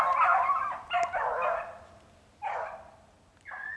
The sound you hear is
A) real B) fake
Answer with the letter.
A